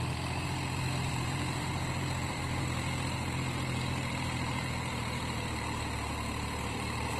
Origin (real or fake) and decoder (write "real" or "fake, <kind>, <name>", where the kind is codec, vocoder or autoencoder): fake, vocoder, BigVGAN v2